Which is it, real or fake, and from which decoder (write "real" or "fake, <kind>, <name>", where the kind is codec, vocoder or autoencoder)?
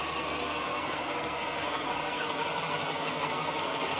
fake, codec, SNAC